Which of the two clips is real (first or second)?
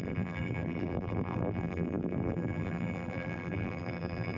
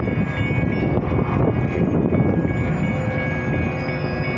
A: second